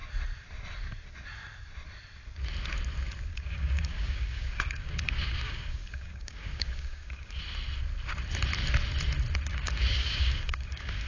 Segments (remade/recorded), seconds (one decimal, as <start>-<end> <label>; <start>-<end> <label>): 0.0-3.3 recorded; 3.3-7.4 remade; 7.4-9.5 recorded; 9.5-11.1 remade